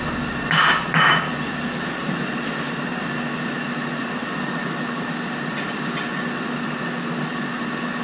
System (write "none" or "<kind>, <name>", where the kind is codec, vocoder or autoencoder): none